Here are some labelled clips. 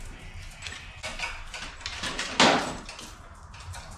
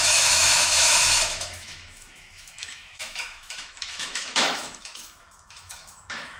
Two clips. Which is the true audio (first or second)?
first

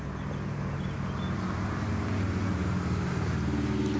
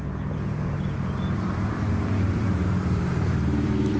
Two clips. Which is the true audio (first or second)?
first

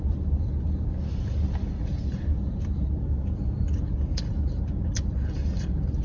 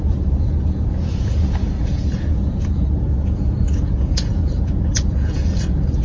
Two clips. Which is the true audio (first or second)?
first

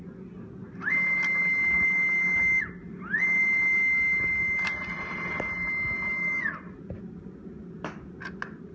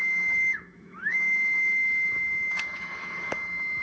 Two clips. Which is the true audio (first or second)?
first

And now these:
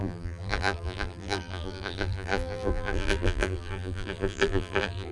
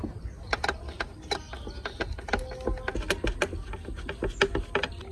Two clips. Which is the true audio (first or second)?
second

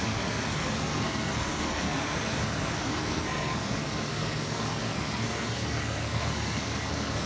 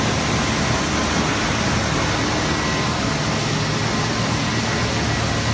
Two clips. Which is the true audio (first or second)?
second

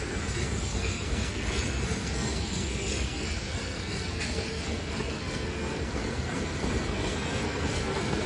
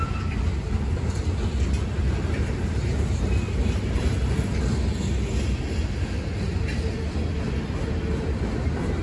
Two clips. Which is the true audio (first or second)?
second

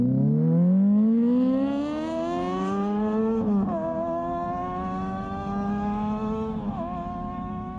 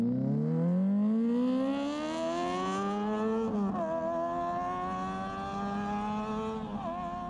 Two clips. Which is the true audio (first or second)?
second